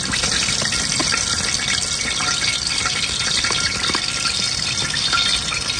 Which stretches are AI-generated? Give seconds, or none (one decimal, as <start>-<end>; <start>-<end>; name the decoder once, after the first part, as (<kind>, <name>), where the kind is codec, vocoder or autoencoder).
none